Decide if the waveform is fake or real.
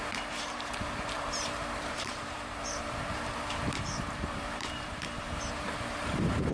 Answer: fake